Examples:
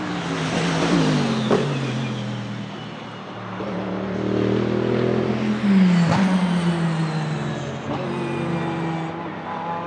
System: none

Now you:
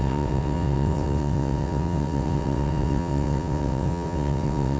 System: vocoder, WaveNeXt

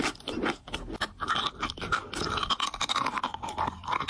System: none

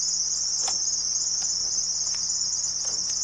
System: none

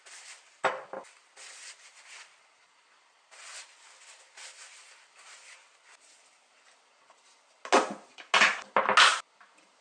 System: none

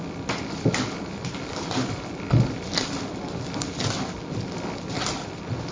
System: none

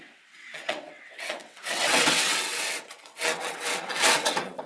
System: vocoder, WaveNeXt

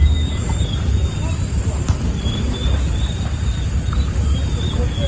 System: none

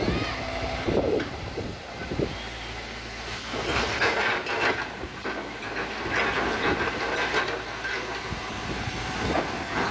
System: none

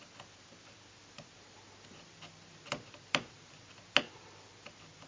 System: none